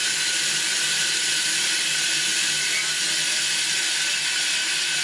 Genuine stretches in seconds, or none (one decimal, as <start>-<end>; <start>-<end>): 0.0-5.0

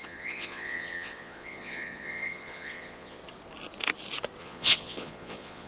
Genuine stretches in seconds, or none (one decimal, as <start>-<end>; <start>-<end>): 3.2-4.4

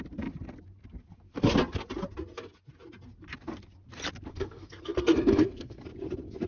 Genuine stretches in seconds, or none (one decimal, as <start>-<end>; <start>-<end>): 0.0-4.3; 5.8-6.5